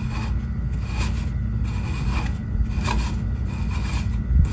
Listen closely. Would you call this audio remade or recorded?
recorded